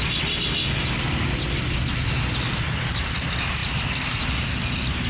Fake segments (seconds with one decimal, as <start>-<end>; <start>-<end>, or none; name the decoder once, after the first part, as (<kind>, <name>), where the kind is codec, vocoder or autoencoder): none